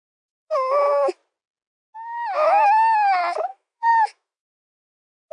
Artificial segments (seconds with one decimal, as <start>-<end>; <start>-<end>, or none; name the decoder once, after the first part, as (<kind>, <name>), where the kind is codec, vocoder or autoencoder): 0.0-1.2 (autoencoder, DAC-VAE); 3.2-5.3

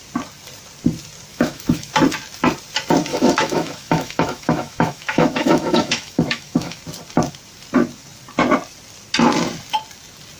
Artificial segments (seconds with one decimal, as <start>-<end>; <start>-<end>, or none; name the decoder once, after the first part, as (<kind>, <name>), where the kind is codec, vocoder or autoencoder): 1.3-1.9 (autoencoder, DAC-VAE); 3.1-6.8

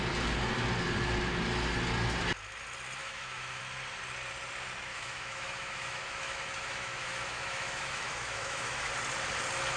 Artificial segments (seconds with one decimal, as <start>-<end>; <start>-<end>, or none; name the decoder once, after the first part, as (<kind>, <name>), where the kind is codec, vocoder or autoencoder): 3.0-3.6 (autoencoder, DAC-VAE); 4.9-8.9

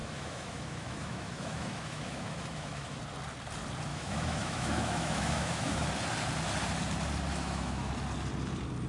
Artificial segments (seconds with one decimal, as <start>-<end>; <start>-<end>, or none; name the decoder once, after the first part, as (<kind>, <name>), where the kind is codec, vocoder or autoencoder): 0.0-3.0 (autoencoder, DAC-VAE); 3.9-5.9; 7.3-7.9

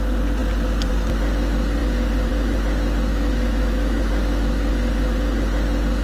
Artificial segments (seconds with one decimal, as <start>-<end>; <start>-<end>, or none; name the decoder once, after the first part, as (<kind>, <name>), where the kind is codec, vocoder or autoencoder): 3.1-4.7 (autoencoder, DAC-VAE)

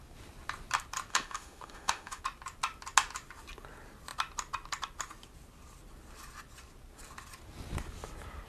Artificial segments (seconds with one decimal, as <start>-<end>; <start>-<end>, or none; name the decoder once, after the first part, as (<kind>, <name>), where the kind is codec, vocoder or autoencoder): 1.1-2.2 (autoencoder, DAC-VAE)

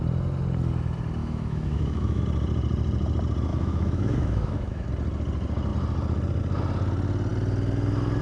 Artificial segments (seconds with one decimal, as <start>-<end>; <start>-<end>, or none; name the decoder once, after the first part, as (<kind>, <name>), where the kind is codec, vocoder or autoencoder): 1.2-2.2 (autoencoder, DAC-VAE); 3.5-4.9

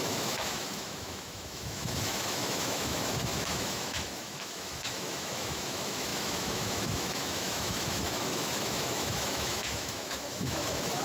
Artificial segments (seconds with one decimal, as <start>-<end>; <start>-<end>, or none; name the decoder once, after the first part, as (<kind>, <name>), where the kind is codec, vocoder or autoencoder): 0.0-11.0 (autoencoder, DAC-VAE)